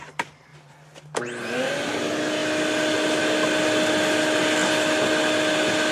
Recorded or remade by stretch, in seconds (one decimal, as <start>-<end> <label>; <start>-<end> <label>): 0.0-5.9 recorded